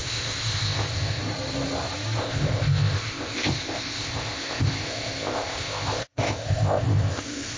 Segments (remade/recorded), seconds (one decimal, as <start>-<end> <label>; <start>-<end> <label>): 0.0-1.2 remade; 1.2-2.2 recorded; 2.2-7.6 remade